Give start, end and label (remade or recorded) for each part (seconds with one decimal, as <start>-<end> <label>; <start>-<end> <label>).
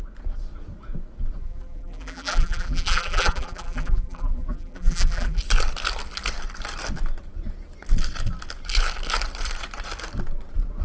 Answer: 0.0-1.4 recorded; 1.4-5.4 remade; 5.4-10.8 recorded